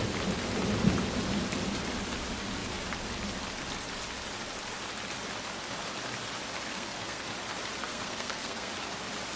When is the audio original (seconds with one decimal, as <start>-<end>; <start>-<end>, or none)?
0.0-6.7; 7.2-7.9; 8.7-9.4